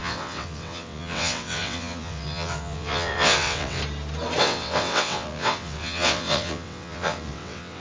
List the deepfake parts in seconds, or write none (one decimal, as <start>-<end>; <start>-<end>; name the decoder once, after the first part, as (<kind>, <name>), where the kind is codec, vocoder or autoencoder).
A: 0.0-3.8 (vocoder, WaveNeXt); 4.4-7.8